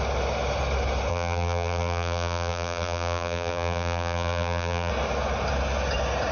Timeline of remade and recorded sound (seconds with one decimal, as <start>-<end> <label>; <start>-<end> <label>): 0.0-1.1 recorded; 1.1-4.9 remade; 4.9-6.3 recorded